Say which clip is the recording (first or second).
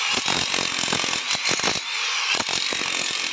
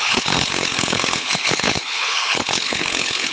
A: first